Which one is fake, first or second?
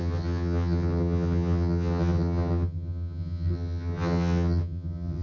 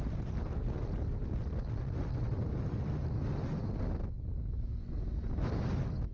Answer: first